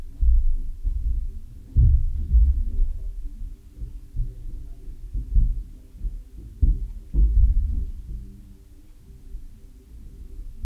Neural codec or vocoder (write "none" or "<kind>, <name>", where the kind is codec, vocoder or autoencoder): none